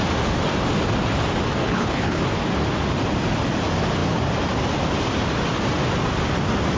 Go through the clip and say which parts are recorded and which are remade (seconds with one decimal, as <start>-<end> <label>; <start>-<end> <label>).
0.0-1.6 recorded; 1.6-2.2 remade; 2.2-6.8 recorded

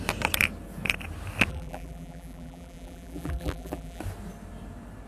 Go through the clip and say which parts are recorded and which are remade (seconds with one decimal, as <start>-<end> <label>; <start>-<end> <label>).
0.0-1.5 recorded; 1.5-4.0 remade; 4.0-5.1 recorded

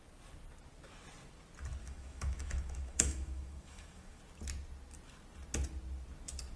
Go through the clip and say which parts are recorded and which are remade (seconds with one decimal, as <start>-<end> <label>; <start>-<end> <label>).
0.0-1.8 recorded; 1.8-4.2 remade; 4.2-6.6 recorded